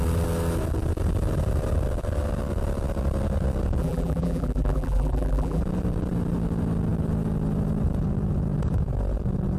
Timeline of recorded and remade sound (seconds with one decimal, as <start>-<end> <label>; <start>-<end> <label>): 0.0-3.8 recorded; 3.8-5.6 remade; 5.6-9.6 recorded